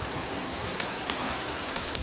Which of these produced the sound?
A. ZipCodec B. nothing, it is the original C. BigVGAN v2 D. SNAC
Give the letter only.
D